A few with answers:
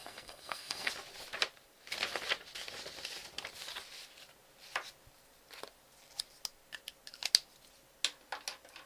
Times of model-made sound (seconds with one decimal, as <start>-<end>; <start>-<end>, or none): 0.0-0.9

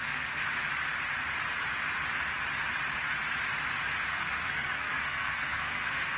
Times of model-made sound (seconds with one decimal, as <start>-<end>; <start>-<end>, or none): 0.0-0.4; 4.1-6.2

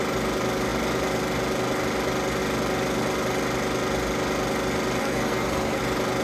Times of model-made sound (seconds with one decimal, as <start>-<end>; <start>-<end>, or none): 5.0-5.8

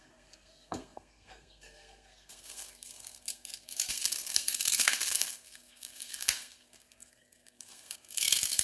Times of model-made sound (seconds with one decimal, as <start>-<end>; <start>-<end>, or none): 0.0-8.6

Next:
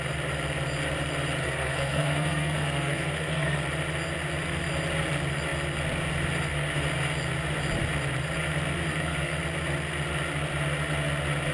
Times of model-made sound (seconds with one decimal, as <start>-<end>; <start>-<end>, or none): 1.4-3.7; 8.9-9.4